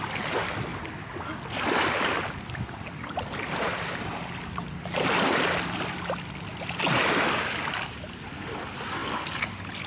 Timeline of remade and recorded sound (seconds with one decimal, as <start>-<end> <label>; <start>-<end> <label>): 0.0-9.9 recorded